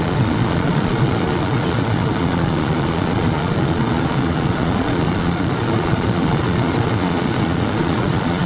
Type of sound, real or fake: fake